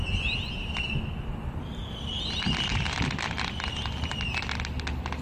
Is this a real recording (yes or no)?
yes